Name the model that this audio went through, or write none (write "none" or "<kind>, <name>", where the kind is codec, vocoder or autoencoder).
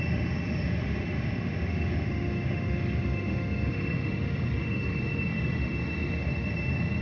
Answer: autoencoder, DAC-VAE